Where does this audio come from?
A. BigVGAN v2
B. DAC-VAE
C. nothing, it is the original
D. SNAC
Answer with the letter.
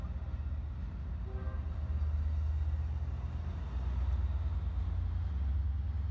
C